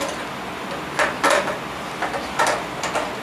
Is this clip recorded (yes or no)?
yes